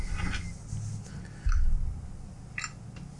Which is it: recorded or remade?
recorded